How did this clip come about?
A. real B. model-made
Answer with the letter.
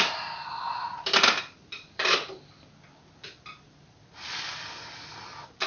A